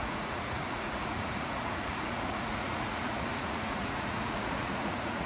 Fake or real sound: fake